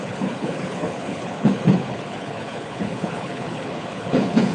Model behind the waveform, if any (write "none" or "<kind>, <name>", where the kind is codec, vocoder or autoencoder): codec, HILCodec